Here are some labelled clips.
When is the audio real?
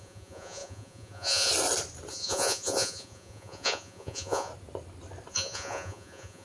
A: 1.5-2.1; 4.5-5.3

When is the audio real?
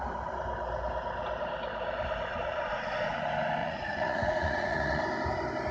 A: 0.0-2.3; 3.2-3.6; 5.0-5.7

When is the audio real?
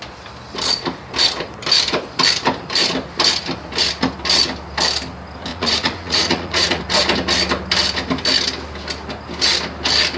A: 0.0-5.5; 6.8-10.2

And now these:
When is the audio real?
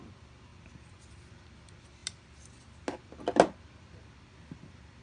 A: 0.0-5.0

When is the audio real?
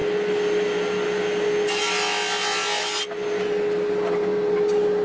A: 0.0-5.0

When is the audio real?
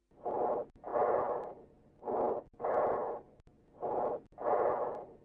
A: 0.0-5.2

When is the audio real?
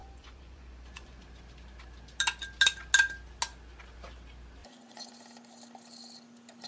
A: 1.2-4.6; 5.2-6.7